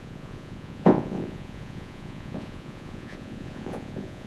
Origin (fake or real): fake